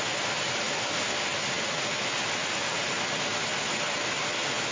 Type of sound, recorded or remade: recorded